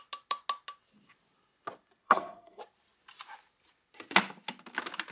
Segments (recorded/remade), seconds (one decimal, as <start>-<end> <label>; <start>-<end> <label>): 0.0-2.0 recorded; 2.0-2.6 remade; 2.6-5.1 recorded